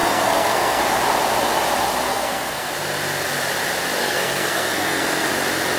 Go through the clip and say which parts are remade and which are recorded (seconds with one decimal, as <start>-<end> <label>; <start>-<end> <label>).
0.0-0.8 remade; 0.8-2.1 recorded; 2.1-2.7 remade; 2.7-4.0 recorded; 4.0-5.3 remade; 5.3-5.8 recorded